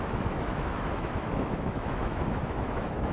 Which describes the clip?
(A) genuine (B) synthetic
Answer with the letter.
B